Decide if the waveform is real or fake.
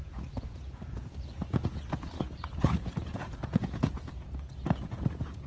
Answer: fake